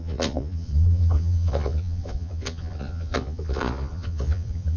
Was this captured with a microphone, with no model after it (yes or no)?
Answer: no